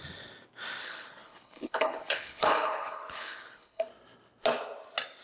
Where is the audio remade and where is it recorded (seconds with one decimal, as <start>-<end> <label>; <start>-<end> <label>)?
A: 0.0-0.8 recorded; 0.8-3.9 remade; 3.9-5.2 recorded